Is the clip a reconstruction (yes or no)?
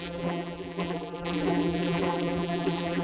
yes